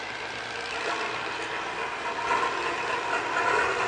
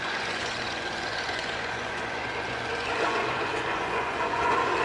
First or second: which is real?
first